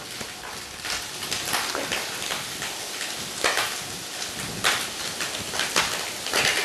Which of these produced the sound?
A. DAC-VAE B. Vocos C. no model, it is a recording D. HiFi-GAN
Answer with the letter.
C